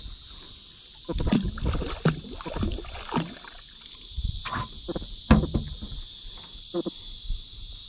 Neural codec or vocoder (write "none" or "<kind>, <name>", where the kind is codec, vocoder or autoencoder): none